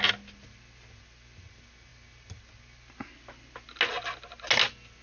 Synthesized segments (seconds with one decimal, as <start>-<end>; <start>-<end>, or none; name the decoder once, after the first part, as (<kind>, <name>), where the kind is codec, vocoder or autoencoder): none